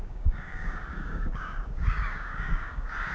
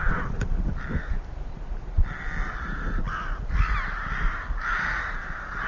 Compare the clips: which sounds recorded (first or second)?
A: second